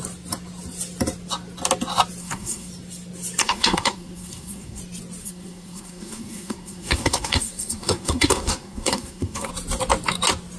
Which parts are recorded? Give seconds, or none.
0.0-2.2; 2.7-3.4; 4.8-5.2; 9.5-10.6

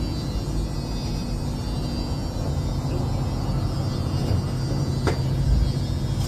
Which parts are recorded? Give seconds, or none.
0.0-6.3

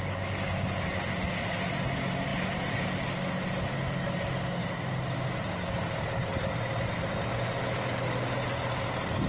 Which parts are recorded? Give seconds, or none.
0.0-9.3

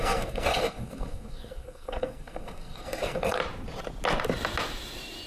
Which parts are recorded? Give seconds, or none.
3.4-5.3

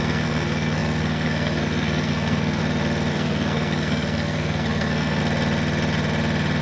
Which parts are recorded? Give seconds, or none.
2.6-3.1; 5.2-6.6